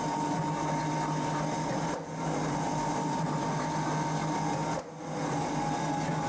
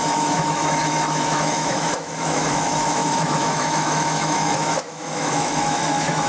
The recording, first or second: first